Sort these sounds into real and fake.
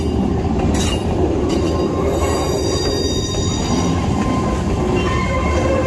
real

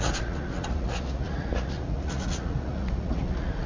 fake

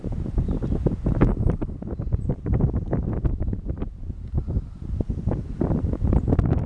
fake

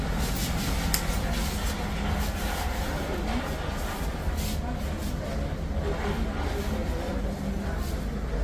real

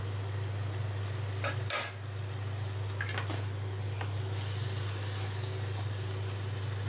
real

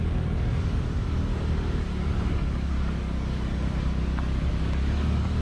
fake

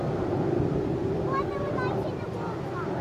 real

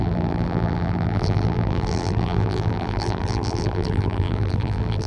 fake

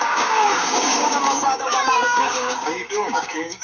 fake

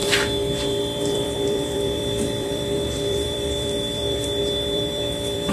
fake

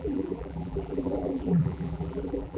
fake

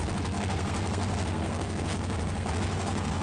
fake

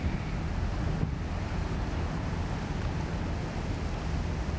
real